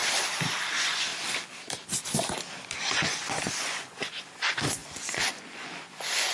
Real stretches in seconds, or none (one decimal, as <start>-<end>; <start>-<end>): 0.0-0.7; 1.1-2.9

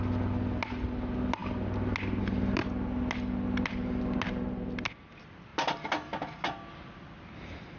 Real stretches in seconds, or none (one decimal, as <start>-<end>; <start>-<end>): 0.0-7.8

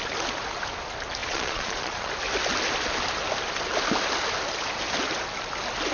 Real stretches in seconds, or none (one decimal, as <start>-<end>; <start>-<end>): 0.0-1.2; 2.1-5.9

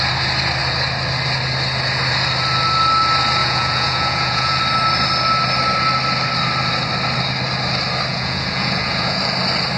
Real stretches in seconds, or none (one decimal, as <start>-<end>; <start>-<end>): 0.0-3.4; 4.6-8.1; 9.2-9.8

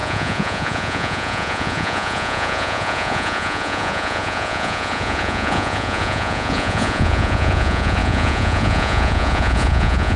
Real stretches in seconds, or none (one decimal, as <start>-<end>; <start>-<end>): none

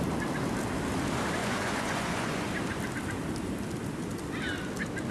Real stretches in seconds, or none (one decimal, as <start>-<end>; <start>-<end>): 0.0-1.4; 2.5-5.1